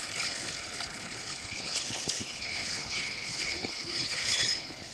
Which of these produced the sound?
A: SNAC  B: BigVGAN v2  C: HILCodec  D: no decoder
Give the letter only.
C